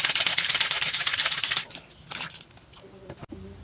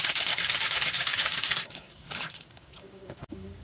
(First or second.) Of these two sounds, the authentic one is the first